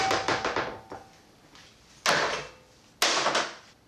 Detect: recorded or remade recorded